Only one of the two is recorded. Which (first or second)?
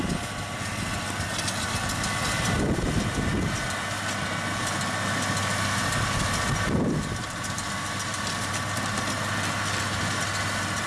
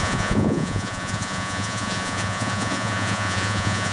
first